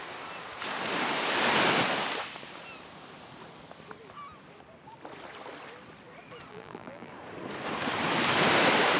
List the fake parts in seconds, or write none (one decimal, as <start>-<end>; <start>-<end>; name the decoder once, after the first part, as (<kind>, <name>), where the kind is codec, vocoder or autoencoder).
6.5-7.1 (vocoder, BigVGAN v2)